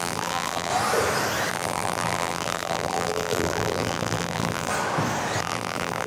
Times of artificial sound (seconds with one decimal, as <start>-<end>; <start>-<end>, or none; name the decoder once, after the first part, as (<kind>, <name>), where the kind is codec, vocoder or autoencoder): 0.0-0.7 (vocoder, BigVGAN v2); 1.5-4.7; 5.4-6.1